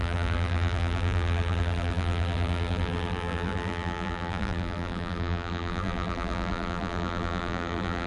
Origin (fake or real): fake